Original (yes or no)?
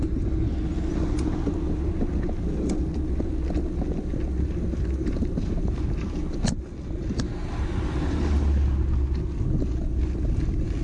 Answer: yes